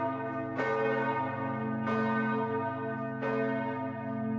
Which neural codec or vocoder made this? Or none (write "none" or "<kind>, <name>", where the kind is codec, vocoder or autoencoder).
none